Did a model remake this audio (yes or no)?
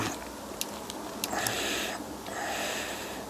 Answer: no